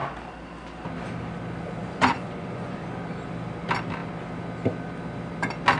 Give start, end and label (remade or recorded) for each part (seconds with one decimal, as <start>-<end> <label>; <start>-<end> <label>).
0.0-1.8 recorded; 1.8-2.9 remade; 2.9-5.8 recorded